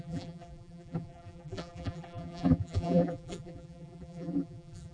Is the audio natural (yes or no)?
no